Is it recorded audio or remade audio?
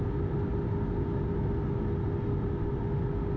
recorded